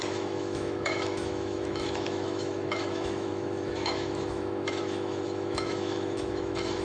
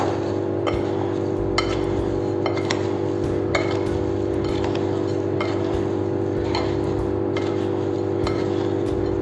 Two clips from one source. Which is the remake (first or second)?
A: first